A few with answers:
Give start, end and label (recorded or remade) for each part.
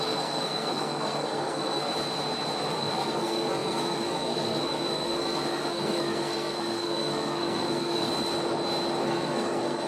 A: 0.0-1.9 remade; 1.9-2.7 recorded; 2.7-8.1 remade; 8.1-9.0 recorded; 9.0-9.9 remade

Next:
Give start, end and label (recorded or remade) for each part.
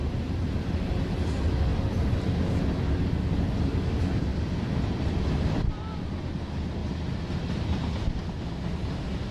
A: 0.0-1.7 recorded; 1.7-2.2 remade; 2.2-4.3 recorded; 4.3-5.9 remade; 5.9-9.3 recorded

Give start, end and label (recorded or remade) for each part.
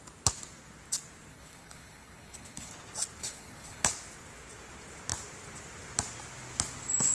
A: 0.0-1.3 recorded; 1.3-2.7 remade; 2.7-3.2 recorded; 3.2-3.9 remade; 3.9-7.1 recorded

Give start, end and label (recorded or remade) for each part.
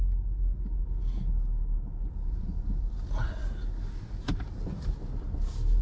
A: 0.0-5.8 recorded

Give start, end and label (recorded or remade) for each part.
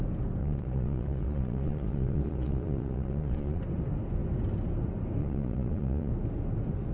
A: 0.0-0.4 recorded; 0.4-3.6 remade; 3.6-5.2 recorded; 5.2-6.1 remade; 6.1-6.9 recorded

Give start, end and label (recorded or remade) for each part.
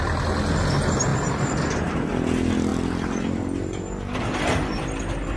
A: 0.0-5.4 recorded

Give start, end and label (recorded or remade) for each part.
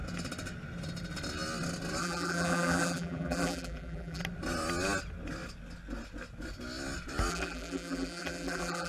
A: 0.0-2.0 recorded; 2.0-4.2 remade; 4.2-7.3 recorded; 7.3-8.9 remade